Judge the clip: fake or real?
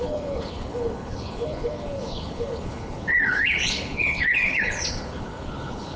fake